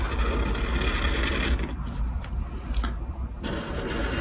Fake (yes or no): no